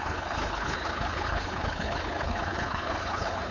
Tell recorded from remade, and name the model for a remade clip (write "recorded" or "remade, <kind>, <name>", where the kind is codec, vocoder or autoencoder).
remade, codec, HILCodec